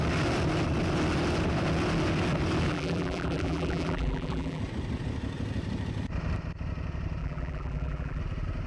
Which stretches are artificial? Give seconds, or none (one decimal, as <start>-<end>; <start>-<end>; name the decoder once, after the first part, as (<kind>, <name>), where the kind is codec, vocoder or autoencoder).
2.7-4.6 (vocoder, BigVGAN v2); 7.2-8.2